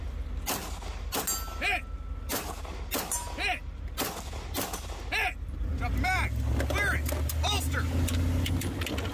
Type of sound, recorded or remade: recorded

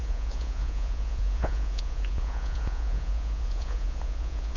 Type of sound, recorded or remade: remade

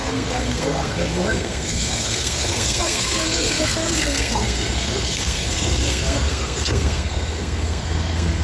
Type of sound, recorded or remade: remade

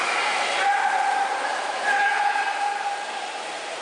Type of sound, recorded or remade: remade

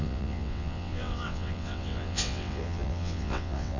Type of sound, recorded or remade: remade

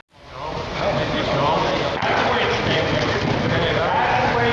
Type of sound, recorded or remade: recorded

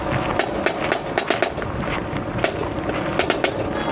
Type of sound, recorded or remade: recorded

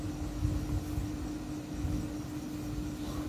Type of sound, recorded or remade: recorded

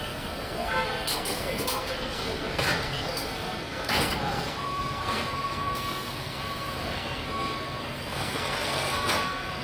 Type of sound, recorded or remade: remade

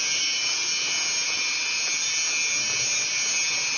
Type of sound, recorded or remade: recorded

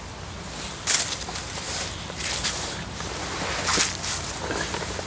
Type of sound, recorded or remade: recorded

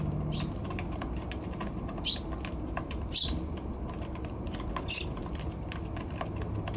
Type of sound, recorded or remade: recorded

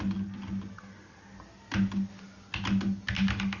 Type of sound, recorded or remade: recorded